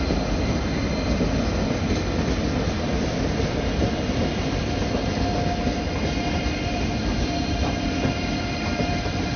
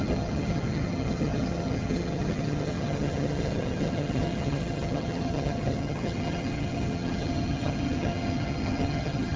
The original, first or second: first